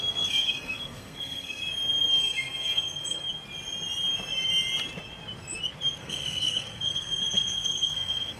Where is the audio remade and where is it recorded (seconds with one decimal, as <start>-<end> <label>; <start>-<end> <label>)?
0.0-1.6 remade; 1.6-2.1 recorded; 2.1-3.2 remade; 3.2-6.0 recorded; 6.0-8.4 remade